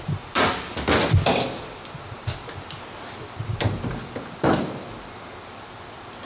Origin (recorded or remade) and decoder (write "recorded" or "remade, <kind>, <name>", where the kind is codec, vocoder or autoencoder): recorded